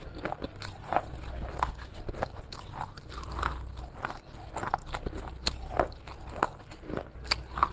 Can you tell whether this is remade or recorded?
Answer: recorded